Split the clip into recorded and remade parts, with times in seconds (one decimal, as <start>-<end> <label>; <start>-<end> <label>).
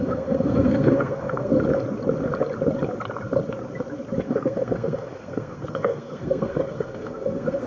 0.0-1.5 remade; 1.5-4.2 recorded; 4.2-7.7 remade